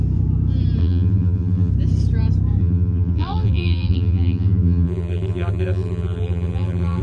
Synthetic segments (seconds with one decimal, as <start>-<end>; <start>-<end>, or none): 0.8-1.7; 2.6-7.0